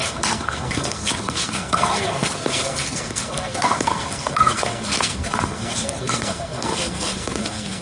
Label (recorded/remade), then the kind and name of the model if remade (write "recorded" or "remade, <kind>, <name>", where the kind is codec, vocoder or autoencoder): remade, codec, SNAC